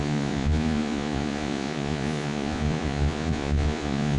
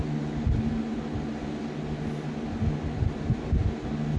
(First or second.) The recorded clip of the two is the second